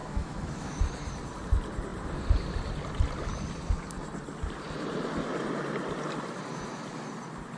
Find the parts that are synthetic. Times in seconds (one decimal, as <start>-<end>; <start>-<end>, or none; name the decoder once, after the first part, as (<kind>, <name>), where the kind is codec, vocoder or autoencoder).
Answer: 0.0-0.8 (autoencoder, DAC-VAE)